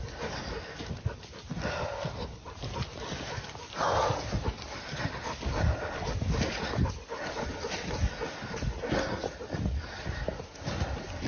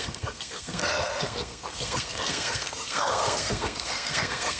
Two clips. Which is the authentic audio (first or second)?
first